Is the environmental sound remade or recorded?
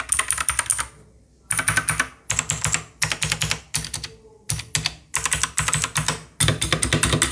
recorded